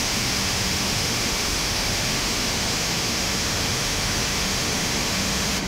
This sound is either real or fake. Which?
fake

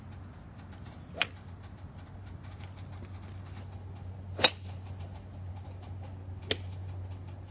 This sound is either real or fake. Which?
real